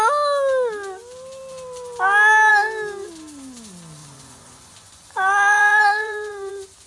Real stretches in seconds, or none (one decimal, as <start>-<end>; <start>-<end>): 0.0-4.0; 6.5-6.9